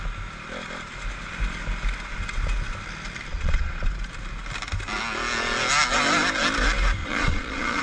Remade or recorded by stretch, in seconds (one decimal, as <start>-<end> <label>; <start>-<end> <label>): 0.0-3.3 recorded; 3.3-3.9 remade; 3.9-7.0 recorded; 7.0-7.8 remade